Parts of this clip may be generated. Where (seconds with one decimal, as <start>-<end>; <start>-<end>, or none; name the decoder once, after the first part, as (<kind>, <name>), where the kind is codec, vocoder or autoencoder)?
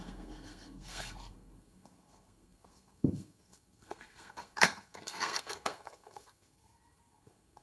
0.0-7.6 (codec, SNAC)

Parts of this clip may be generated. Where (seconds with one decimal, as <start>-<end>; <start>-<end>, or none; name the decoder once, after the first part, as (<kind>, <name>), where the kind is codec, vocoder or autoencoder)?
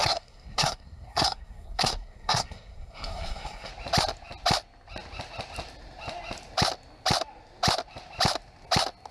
0.0-3.7 (codec, SNAC)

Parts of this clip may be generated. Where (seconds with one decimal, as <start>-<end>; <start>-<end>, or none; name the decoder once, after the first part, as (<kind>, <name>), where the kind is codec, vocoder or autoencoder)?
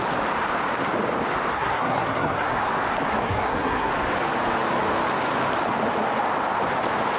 1.5-2.6 (codec, SNAC); 3.1-3.9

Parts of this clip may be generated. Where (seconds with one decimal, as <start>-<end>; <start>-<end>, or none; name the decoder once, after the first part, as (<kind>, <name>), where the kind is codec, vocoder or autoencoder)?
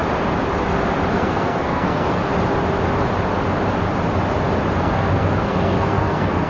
1.1-2.3 (codec, SNAC); 4.8-6.5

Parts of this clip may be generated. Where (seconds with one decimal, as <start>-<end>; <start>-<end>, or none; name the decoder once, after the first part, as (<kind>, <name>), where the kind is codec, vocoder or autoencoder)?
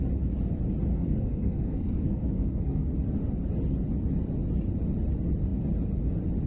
0.9-2.9 (codec, SNAC)